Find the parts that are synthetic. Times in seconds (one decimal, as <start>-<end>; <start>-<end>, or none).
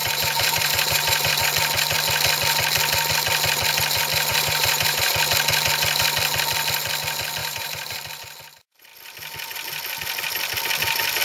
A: 0.0-1.4; 4.3-5.1; 7.4-8.0